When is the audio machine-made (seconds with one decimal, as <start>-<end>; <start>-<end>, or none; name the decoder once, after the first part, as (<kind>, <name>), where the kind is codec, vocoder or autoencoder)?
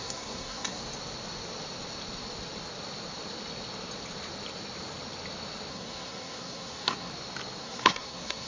0.0-0.8 (codec, SNAC); 5.7-7.1; 7.6-8.5